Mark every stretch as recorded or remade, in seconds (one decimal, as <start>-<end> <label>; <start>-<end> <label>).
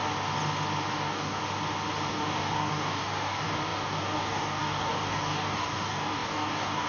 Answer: 0.0-0.9 recorded; 0.9-1.4 remade; 1.4-2.1 recorded; 2.1-6.9 remade